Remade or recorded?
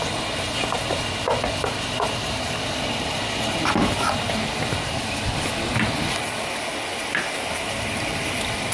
recorded